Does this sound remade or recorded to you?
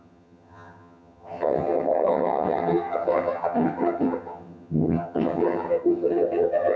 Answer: remade